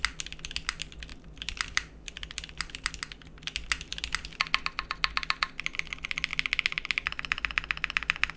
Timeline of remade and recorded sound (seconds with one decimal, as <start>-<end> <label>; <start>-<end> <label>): 0.0-1.1 recorded; 1.1-2.9 remade; 2.9-8.4 recorded